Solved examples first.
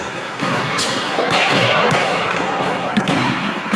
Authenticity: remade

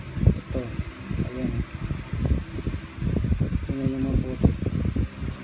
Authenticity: recorded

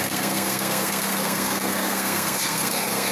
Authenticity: remade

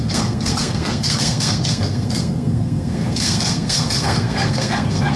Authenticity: remade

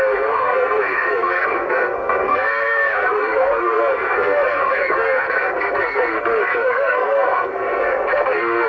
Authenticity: remade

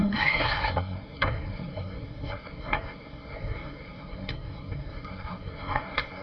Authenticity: remade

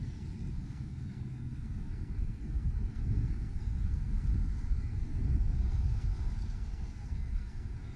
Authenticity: remade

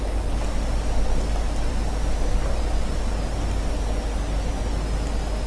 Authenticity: recorded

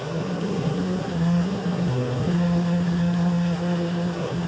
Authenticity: remade